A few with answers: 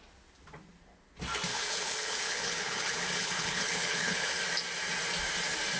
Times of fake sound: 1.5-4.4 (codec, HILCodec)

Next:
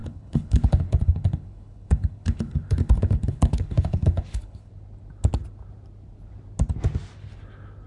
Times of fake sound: 0.0-4.7 (codec, HILCodec)